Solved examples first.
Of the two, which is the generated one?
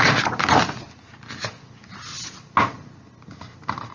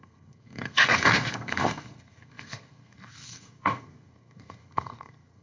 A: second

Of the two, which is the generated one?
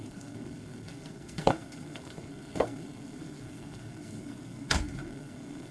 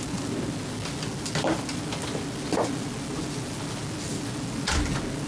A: first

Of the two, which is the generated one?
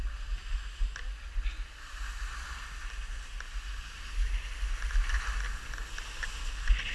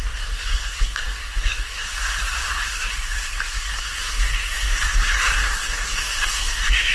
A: second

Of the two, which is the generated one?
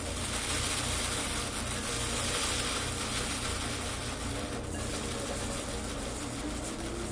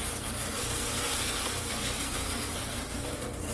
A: second